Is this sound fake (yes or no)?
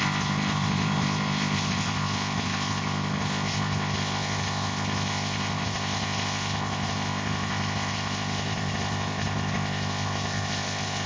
yes